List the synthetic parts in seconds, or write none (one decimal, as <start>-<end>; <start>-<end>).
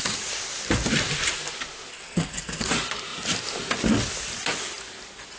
1.9-2.7